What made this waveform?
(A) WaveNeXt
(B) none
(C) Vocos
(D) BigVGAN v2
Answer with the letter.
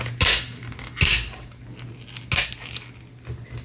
B